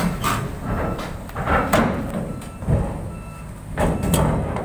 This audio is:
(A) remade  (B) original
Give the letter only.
B